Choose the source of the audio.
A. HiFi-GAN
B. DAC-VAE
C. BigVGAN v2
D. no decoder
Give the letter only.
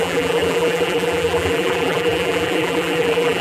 C